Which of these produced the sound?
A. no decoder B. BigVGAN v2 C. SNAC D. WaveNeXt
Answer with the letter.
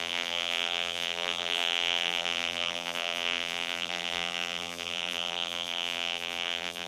B